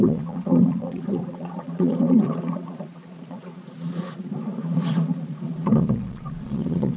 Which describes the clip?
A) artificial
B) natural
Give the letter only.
A